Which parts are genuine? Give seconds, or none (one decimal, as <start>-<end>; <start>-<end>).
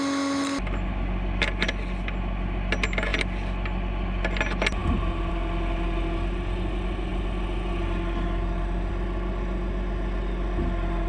0.0-11.1